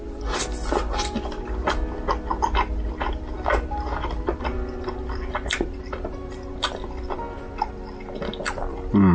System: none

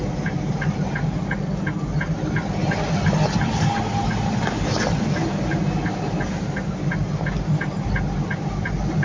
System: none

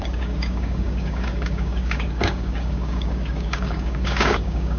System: codec, DAC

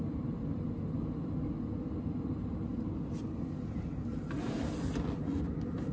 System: none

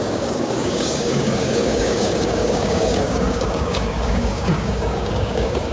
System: codec, DAC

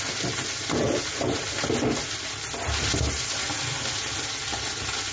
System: none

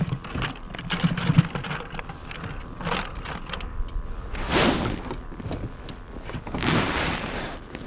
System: none